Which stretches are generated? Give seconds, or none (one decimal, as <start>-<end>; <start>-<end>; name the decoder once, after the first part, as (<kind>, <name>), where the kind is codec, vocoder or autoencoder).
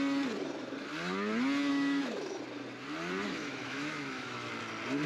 1.7-2.4 (autoencoder, DAC-VAE); 3.4-4.5